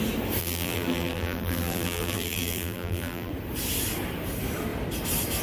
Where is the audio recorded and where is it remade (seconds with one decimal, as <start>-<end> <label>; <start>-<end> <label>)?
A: 0.0-0.4 recorded; 0.4-3.3 remade; 3.3-5.4 recorded